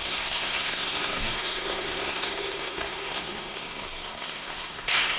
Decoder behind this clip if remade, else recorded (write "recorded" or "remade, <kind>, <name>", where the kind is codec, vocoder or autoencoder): remade, codec, SNAC